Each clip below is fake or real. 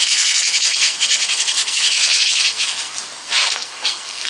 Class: fake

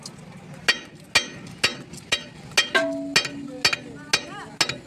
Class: real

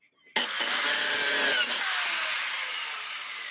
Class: real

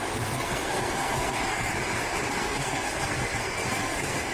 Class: fake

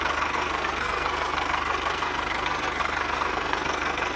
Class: fake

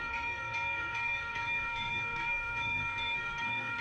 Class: fake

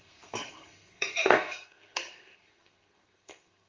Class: fake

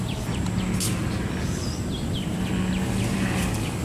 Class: real